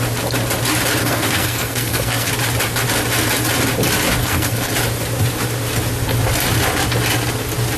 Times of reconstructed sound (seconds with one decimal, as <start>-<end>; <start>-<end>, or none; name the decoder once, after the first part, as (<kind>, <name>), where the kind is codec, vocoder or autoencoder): 1.0-2.3 (codec, SNAC); 4.2-4.7